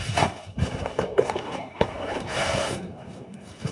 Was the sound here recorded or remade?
remade